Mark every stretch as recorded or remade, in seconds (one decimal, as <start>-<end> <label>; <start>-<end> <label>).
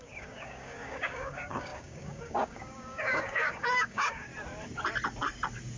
0.0-4.3 remade; 4.3-5.8 recorded